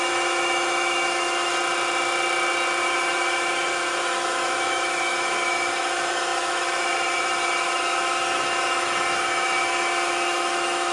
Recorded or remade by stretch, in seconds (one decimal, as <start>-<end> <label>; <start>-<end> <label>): 0.0-1.5 remade; 1.5-2.8 recorded; 2.8-10.9 remade